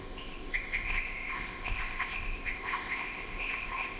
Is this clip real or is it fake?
fake